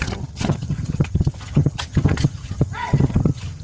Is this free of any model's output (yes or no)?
no